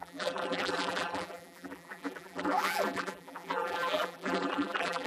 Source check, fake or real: fake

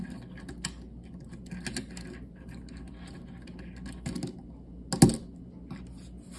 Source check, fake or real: real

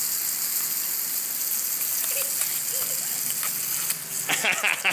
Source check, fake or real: real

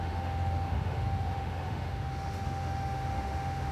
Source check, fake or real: fake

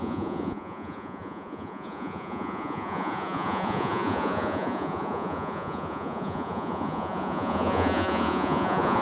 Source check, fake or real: fake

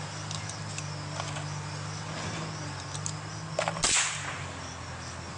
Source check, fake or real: real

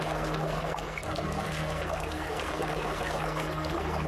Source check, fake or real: fake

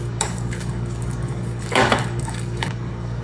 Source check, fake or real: fake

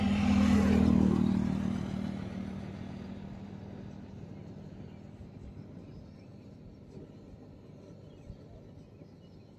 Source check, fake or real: real